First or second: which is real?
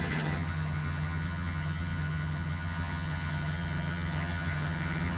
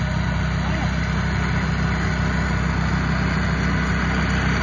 second